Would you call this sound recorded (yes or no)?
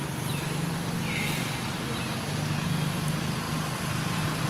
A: yes